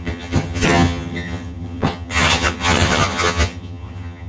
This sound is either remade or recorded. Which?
remade